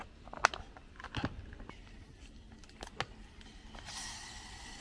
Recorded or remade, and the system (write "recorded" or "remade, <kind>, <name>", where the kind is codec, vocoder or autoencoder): recorded